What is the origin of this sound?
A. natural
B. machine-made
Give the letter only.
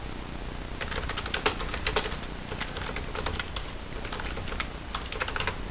A